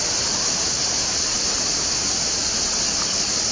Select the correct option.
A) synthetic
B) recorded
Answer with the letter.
B